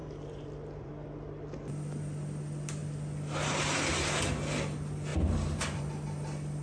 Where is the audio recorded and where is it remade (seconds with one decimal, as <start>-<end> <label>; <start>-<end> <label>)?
0.0-0.9 remade; 0.9-5.1 recorded; 5.1-5.8 remade; 5.8-6.6 recorded